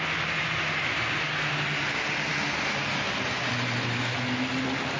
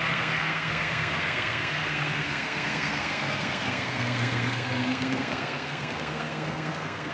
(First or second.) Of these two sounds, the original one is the first